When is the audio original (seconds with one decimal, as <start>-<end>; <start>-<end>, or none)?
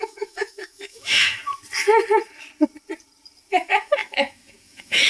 1.4-3.5